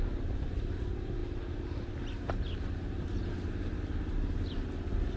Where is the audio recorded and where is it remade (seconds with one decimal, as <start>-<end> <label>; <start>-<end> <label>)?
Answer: 0.0-5.2 recorded